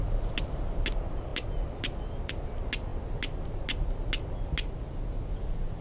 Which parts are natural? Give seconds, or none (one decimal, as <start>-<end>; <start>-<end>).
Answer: 0.0-5.8